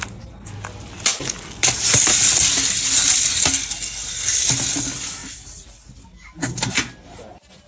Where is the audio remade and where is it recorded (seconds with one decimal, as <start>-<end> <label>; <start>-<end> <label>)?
0.0-7.7 recorded